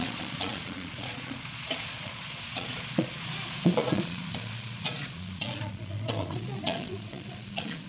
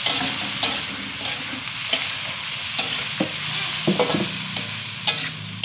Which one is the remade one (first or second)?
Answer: first